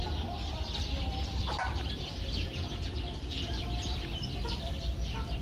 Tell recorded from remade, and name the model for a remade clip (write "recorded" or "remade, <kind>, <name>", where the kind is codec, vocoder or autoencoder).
remade, vocoder, BigVGAN v2